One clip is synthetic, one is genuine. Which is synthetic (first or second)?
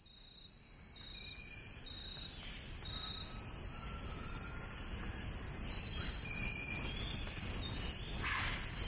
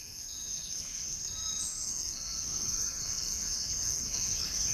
second